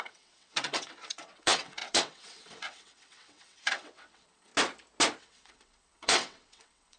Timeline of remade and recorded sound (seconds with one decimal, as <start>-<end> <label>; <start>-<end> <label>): 0.0-4.5 remade; 4.5-5.2 recorded; 5.2-7.0 remade